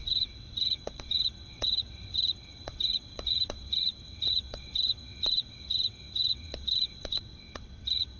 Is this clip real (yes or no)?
no